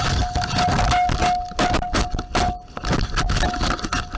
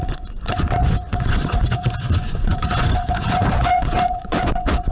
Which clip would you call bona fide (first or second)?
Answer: first